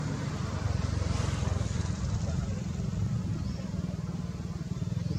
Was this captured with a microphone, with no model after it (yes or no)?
yes